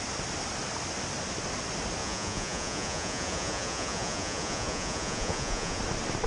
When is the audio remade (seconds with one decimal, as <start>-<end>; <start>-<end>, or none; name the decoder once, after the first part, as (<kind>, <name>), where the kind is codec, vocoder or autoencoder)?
2.0-5.8 (vocoder, Vocos)